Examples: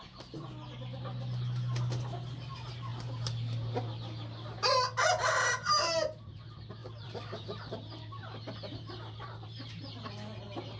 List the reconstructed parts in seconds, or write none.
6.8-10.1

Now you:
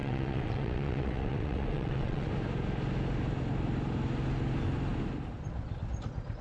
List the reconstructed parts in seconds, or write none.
0.0-2.3

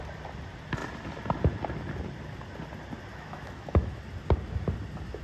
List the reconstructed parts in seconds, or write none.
3.1-4.0

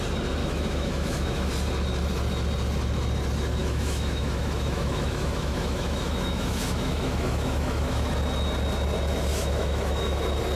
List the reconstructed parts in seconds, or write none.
0.4-1.5; 3.6-8.1; 9.3-10.2

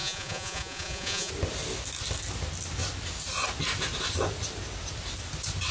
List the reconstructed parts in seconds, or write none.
0.0-1.3

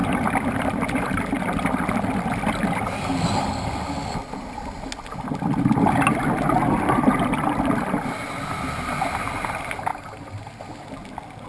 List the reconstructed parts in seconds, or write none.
none

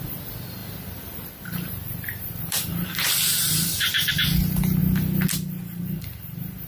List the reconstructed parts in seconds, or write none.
0.6-4.1